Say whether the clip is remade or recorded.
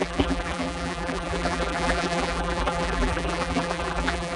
remade